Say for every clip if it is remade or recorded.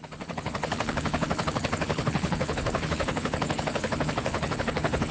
remade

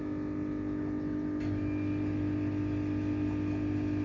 recorded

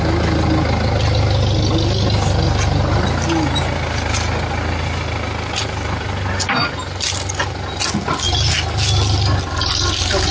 recorded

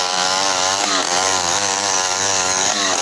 remade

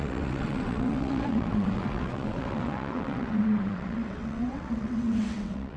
remade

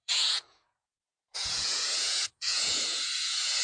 remade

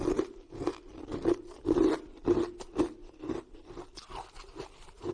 recorded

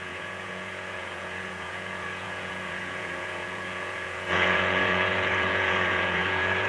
remade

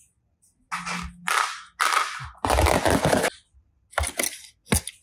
recorded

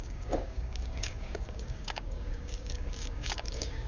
remade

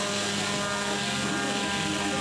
recorded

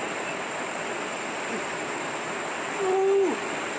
recorded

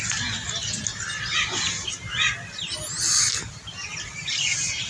recorded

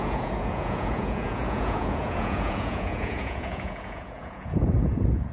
remade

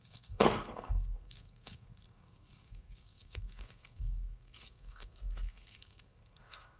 remade